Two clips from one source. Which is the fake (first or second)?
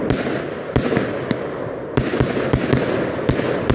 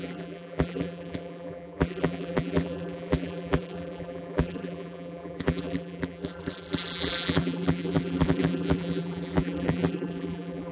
second